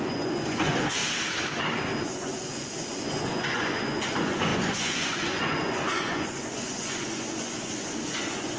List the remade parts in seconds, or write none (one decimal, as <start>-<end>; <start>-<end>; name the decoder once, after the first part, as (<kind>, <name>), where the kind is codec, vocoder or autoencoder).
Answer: 0.0-1.0 (vocoder, Vocos); 2.0-8.6